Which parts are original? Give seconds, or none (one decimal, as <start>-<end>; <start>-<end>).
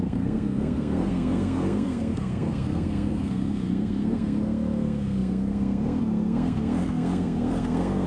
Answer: none